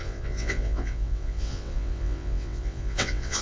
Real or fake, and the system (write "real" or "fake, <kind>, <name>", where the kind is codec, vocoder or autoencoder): fake, vocoder, WaveNeXt